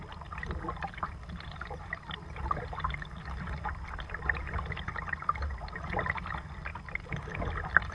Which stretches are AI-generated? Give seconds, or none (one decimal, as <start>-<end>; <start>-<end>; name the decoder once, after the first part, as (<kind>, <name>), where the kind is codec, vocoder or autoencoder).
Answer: none